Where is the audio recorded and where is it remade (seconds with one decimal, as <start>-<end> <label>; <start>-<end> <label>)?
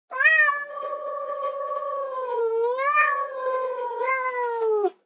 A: 0.0-0.7 recorded; 0.7-2.4 remade; 2.4-3.0 recorded; 3.0-4.1 remade; 4.1-5.1 recorded